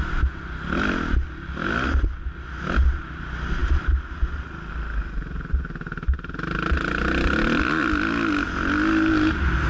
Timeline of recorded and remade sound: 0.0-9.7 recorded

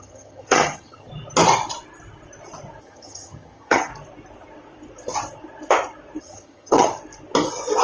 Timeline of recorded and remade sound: 0.0-1.1 remade; 1.1-2.8 recorded; 2.8-3.9 remade; 3.9-6.2 recorded; 6.2-6.9 remade; 6.9-7.8 recorded

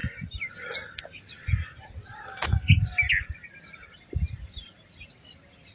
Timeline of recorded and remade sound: 0.0-5.7 recorded

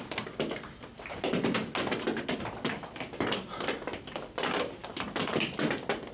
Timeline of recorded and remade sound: 0.0-6.1 recorded

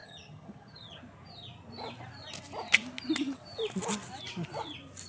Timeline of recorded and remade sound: 0.0-1.0 remade; 1.0-5.1 recorded

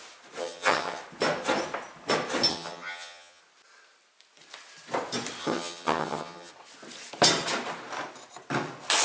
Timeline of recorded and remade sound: 0.0-0.4 recorded; 0.4-1.0 remade; 1.0-2.5 recorded; 2.5-3.4 remade; 3.4-5.4 recorded; 5.4-6.5 remade; 6.5-9.0 recorded